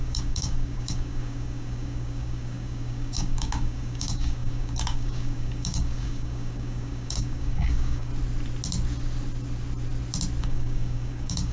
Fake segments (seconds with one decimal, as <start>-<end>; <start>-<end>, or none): 0.0-8.1; 10.4-11.5